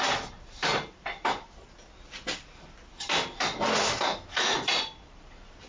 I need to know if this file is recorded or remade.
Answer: remade